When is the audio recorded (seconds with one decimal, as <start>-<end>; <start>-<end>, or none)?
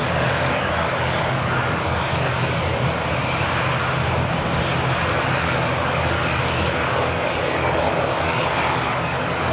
2.7-4.8